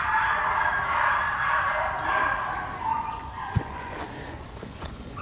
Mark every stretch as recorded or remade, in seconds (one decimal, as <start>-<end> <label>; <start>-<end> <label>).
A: 0.0-2.9 recorded; 2.9-5.2 remade